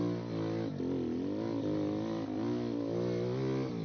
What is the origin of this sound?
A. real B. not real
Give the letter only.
A